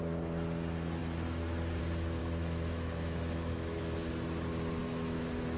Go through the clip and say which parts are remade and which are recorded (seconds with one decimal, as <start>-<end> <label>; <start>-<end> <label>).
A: 0.0-2.2 recorded; 2.2-3.8 remade; 3.8-4.8 recorded; 4.8-5.6 remade